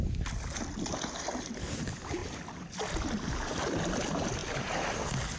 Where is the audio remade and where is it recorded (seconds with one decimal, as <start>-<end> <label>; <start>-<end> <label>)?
0.0-5.4 recorded